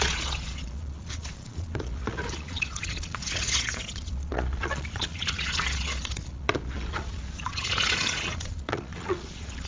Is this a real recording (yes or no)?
no